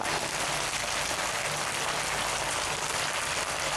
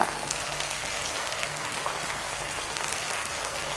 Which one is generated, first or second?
second